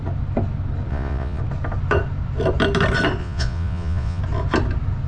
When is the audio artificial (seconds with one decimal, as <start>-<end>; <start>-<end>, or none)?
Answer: 0.9-1.4; 3.2-4.2